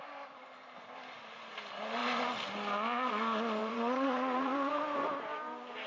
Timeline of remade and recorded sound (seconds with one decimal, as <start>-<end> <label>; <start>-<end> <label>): 0.0-3.6 recorded; 3.6-4.8 remade; 4.8-5.9 recorded